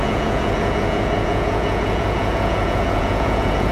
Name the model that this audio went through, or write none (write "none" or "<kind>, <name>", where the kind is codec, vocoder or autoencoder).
vocoder, Vocos